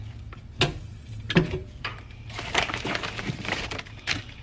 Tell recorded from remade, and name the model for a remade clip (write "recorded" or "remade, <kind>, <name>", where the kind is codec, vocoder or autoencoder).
remade, vocoder, BigVGAN v2